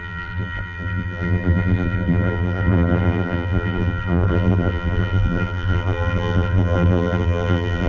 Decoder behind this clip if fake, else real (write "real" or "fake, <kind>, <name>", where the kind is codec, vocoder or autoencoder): fake, vocoder, BigVGAN v2